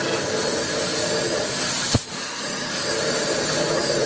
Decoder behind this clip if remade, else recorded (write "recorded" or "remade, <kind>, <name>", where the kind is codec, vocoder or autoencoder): recorded